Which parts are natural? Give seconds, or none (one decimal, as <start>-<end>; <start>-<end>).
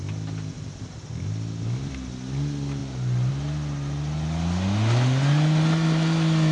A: 0.0-6.5